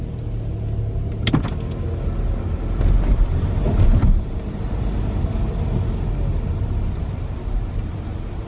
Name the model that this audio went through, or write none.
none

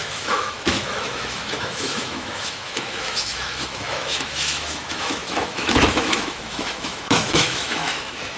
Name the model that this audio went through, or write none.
autoencoder, DAC-VAE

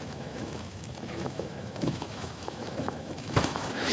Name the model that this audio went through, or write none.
autoencoder, DAC-VAE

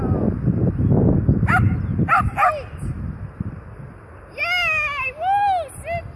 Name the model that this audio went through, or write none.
none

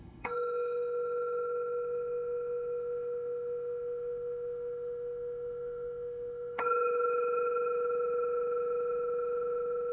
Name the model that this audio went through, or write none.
autoencoder, DAC-VAE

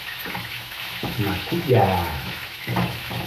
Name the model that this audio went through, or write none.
autoencoder, DAC-VAE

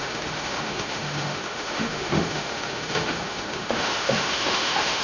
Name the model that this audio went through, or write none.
autoencoder, DAC-VAE